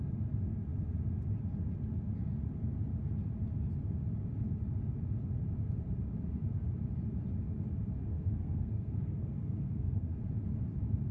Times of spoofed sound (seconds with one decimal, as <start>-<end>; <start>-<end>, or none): 8.1-10.2